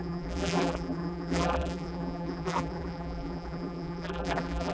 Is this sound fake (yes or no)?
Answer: yes